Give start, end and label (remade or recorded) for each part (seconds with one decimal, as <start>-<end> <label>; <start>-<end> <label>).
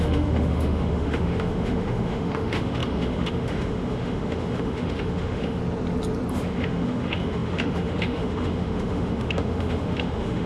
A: 0.0-5.6 remade; 5.6-6.3 recorded; 6.3-10.5 remade